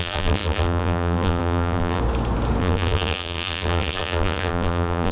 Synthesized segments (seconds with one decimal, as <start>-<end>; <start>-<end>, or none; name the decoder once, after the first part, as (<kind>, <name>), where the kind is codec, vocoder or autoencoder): 0.0-2.0 (vocoder, BigVGAN v2); 2.6-5.1